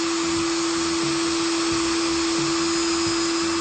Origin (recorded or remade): recorded